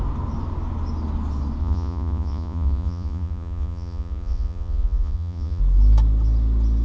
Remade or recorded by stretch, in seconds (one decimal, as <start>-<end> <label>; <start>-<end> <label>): 0.0-1.6 recorded; 1.6-5.6 remade; 5.6-6.8 recorded